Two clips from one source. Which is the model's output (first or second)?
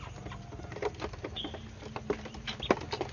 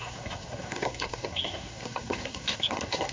second